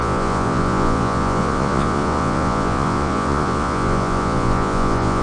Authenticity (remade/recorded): remade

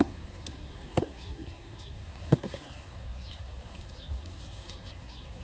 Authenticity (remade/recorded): remade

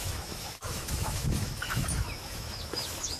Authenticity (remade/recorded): remade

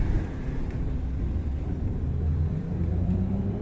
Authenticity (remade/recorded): remade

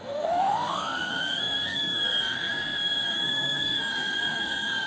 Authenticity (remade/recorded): remade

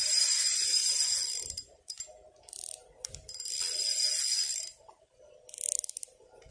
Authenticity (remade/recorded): recorded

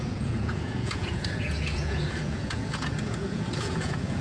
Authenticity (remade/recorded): remade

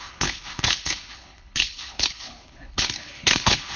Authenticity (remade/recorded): remade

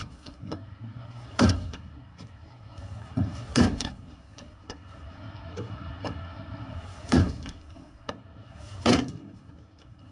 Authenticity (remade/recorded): remade